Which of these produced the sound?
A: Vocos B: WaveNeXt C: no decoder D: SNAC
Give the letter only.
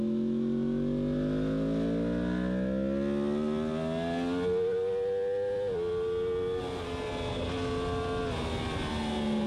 C